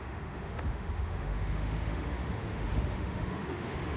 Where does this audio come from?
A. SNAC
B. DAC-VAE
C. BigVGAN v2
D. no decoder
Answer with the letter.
B